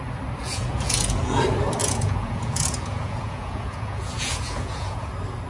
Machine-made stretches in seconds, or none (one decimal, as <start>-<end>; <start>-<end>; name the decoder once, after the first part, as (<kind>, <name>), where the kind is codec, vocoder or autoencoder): 0.4-1.4 (vocoder, Vocos); 1.8-5.1